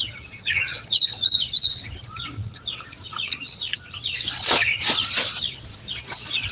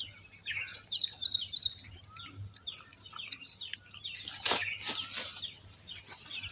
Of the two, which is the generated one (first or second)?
first